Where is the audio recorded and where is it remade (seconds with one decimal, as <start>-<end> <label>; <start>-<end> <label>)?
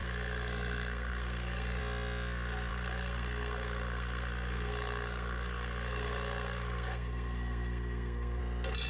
0.0-1.8 remade; 1.8-2.7 recorded; 2.7-8.4 remade; 8.4-8.9 recorded